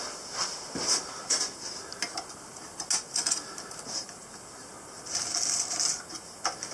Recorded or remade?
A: recorded